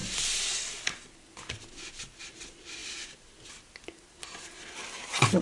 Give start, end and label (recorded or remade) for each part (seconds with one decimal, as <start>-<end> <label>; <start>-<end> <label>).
0.0-5.4 recorded